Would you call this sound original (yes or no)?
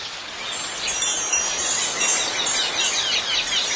yes